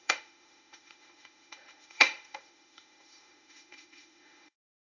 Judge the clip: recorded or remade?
remade